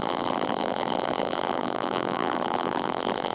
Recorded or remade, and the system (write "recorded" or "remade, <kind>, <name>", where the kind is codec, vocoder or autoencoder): remade, vocoder, BigVGAN v2